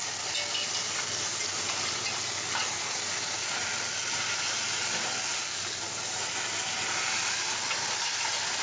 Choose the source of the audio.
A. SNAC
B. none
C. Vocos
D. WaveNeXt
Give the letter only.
B